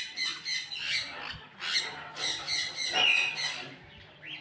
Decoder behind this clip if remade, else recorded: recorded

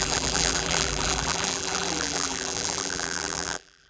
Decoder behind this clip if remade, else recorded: remade, vocoder, BigVGAN v2